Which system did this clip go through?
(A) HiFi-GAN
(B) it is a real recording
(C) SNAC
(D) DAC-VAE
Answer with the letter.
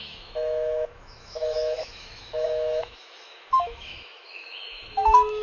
D